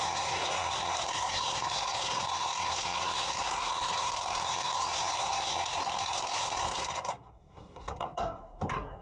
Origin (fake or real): fake